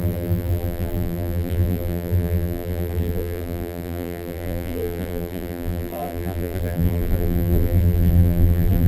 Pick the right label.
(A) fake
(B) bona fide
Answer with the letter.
A